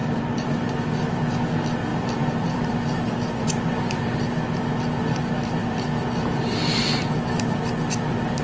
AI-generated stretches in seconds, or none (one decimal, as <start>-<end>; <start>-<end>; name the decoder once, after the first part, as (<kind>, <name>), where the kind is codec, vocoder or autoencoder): 0.0-0.7 (vocoder, BigVGAN v2); 1.9-4.2; 5.4-5.9